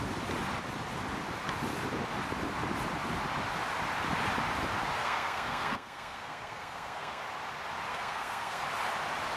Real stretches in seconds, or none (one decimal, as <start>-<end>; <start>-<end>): 0.0-5.0; 7.2-7.9; 8.6-9.4